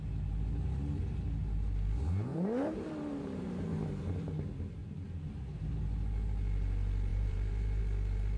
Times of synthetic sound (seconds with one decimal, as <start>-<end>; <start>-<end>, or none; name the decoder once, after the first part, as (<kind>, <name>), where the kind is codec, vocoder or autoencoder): 2.3-3.4 (vocoder, BigVGAN v2); 4.8-5.7; 7.1-7.8